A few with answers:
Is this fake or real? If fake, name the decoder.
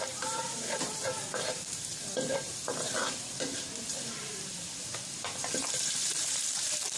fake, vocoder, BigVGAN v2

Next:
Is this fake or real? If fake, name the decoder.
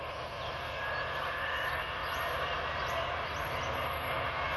real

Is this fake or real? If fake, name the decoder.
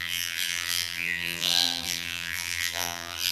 fake, vocoder, BigVGAN v2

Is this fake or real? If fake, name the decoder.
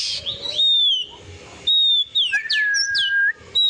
real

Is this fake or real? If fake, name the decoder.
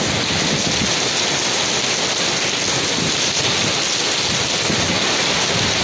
real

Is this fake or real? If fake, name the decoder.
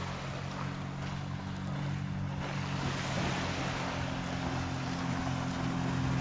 real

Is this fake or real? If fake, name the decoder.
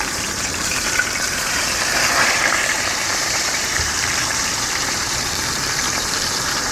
fake, vocoder, BigVGAN v2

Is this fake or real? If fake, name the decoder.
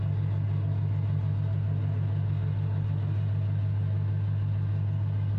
real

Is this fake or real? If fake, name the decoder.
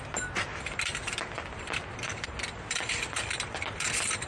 fake, vocoder, BigVGAN v2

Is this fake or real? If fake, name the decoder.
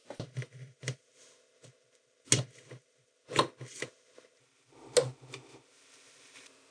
real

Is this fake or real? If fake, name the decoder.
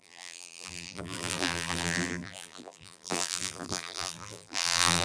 fake, vocoder, BigVGAN v2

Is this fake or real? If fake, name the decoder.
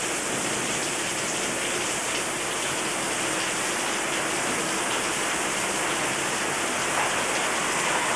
real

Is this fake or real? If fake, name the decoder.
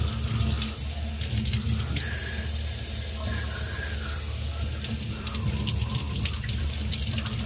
real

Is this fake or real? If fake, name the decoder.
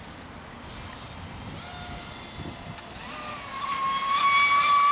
real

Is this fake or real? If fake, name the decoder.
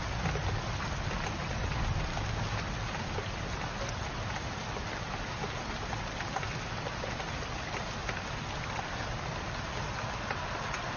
real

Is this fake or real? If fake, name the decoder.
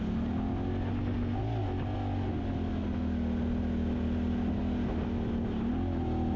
real